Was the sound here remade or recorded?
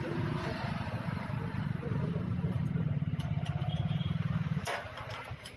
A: remade